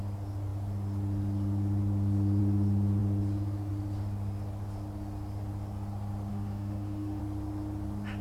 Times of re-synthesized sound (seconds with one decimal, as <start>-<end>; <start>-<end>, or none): 6.3-7.2